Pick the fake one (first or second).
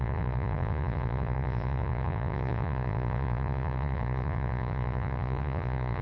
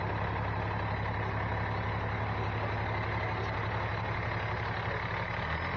first